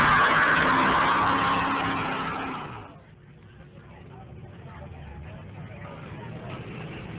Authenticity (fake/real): real